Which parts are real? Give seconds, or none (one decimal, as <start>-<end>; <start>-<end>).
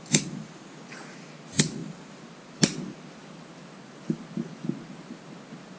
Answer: 0.0-5.8